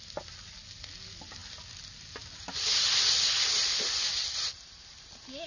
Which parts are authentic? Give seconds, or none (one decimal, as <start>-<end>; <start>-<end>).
0.0-5.5